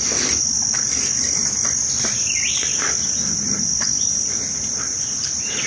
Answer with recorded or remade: remade